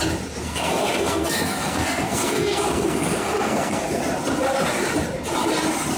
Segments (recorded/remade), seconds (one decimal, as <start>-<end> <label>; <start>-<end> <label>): 0.0-0.4 recorded; 0.4-4.0 remade; 4.0-6.0 recorded